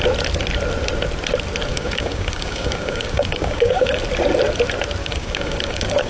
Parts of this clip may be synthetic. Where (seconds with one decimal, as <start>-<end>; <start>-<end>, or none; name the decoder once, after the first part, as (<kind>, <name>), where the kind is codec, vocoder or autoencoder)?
1.7-4.0 (codec, DAC); 5.0-6.1